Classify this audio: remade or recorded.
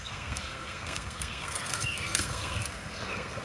remade